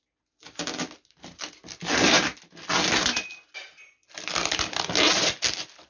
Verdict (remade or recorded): recorded